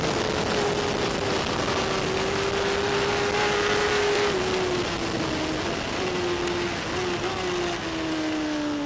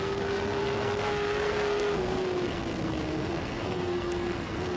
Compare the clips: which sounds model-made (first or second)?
second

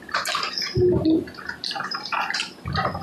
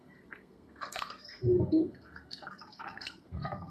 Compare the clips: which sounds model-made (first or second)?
second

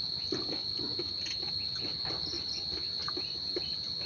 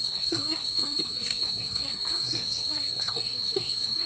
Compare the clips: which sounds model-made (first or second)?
second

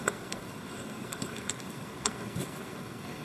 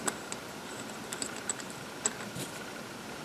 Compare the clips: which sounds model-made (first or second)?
first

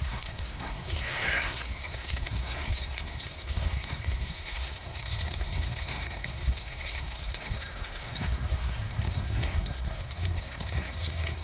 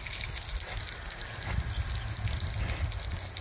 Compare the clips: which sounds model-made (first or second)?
first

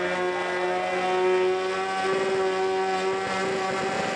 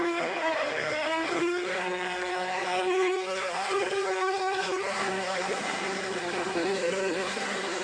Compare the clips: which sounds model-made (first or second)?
second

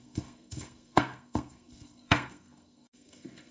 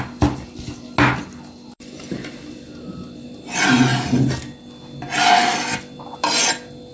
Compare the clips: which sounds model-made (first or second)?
first